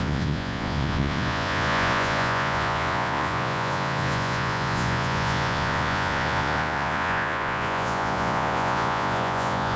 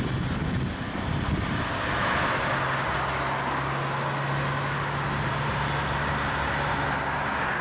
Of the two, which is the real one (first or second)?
second